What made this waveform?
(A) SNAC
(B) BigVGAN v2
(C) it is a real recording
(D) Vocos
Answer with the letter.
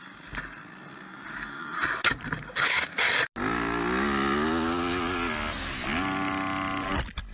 C